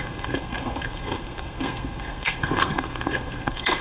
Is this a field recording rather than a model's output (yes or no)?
no